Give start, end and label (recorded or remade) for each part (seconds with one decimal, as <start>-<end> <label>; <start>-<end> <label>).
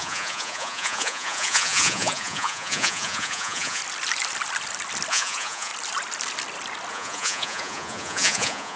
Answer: 0.0-3.8 remade; 3.8-5.1 recorded; 5.1-5.7 remade; 5.7-6.9 recorded; 6.9-8.8 remade